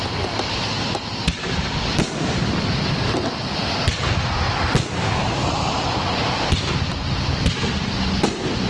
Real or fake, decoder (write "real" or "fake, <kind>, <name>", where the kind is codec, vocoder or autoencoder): real